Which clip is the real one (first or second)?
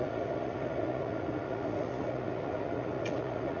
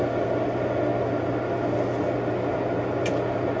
second